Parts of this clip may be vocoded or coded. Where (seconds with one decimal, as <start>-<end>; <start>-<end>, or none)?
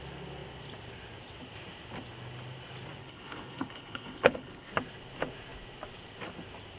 3.0-4.7